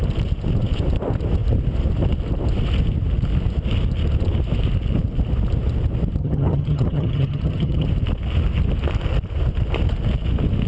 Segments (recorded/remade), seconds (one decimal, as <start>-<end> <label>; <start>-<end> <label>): 0.0-6.2 recorded; 6.2-7.9 remade; 7.9-10.7 recorded